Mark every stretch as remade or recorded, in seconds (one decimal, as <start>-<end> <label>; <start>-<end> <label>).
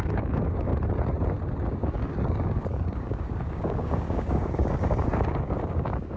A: 0.0-0.7 remade; 0.7-1.7 recorded; 1.7-6.2 remade